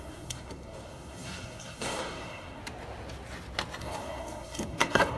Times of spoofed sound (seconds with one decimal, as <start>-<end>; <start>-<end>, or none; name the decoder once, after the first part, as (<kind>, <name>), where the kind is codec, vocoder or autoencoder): 0.0-2.6 (codec, SNAC); 3.8-5.2